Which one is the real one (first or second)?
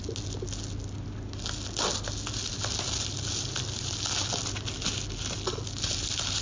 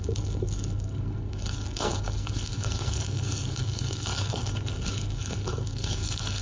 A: first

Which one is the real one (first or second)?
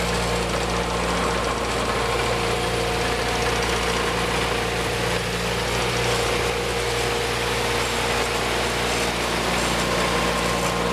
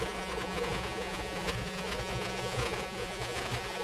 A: first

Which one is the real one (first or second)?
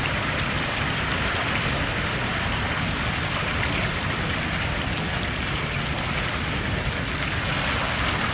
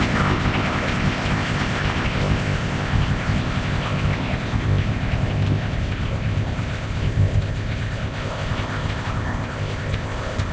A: first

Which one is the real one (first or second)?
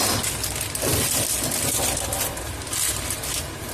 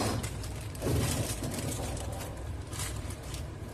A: first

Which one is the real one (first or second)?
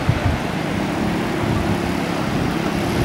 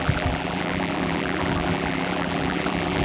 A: first